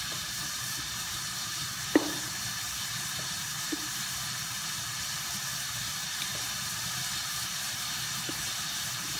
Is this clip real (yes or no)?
no